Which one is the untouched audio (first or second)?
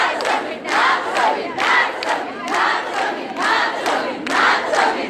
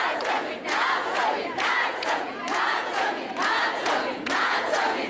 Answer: first